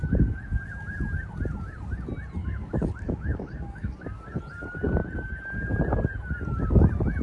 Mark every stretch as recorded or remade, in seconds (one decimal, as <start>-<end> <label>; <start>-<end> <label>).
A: 0.0-2.4 recorded; 2.4-4.2 remade; 4.2-7.2 recorded